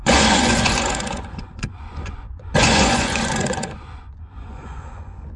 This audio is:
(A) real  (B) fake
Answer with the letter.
B